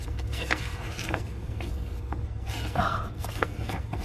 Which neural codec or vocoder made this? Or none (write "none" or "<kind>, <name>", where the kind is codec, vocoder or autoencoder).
codec, SNAC